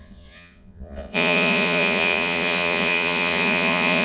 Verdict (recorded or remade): remade